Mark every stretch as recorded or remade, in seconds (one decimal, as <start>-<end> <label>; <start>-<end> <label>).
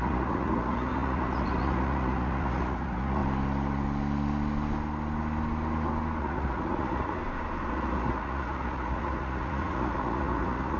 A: 0.0-3.2 remade; 3.2-6.2 recorded; 6.2-7.2 remade; 7.2-7.7 recorded; 7.7-10.8 remade